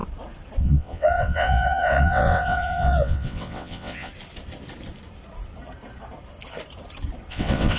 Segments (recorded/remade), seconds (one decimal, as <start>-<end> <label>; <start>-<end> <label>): 0.0-0.6 recorded; 0.6-4.1 remade; 4.1-7.3 recorded; 7.3-7.8 remade